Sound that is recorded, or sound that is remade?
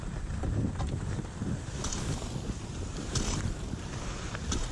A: remade